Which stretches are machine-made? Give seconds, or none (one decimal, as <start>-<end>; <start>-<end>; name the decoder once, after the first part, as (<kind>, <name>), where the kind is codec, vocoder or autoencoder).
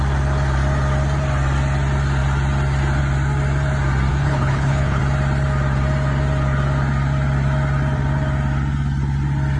4.1-5.0 (codec, HILCodec)